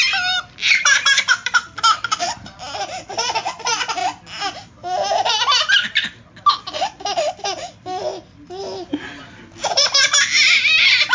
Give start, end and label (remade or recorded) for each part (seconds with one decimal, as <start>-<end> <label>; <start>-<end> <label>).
0.0-4.0 remade; 4.0-6.6 recorded; 6.6-8.1 remade; 8.1-8.6 recorded; 8.6-11.1 remade